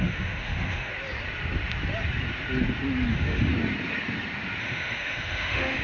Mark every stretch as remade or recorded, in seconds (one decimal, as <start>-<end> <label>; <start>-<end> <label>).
0.0-0.9 remade; 0.9-3.1 recorded; 3.1-3.5 remade; 3.5-4.6 recorded; 4.6-5.8 remade